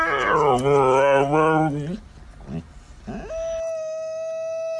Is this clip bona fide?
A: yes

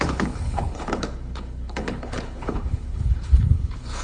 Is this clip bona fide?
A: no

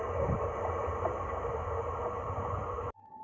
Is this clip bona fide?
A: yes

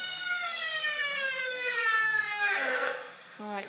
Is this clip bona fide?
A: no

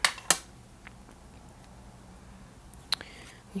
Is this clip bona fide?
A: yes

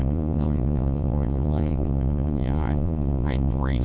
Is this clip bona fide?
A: no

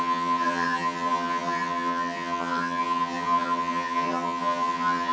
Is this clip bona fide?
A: no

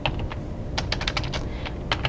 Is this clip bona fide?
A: yes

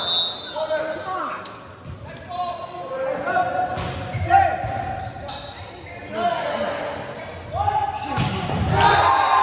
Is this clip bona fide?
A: yes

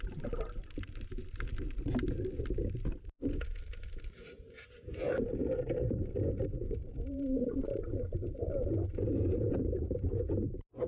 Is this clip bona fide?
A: no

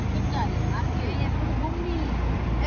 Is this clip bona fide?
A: yes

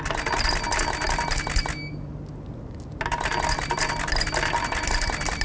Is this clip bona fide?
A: yes